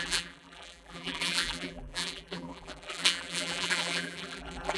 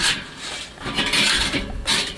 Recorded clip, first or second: second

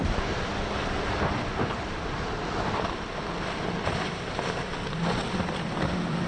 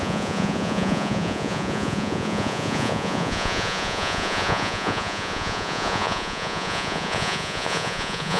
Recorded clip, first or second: first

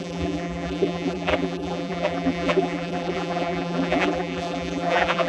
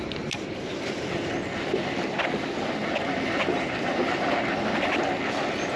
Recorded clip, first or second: second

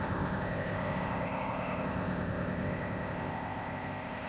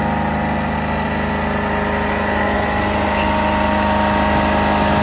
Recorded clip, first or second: second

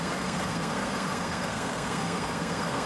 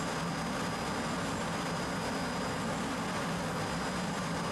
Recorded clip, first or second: second